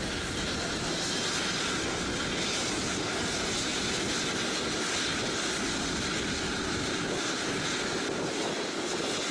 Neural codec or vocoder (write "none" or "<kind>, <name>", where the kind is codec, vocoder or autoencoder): none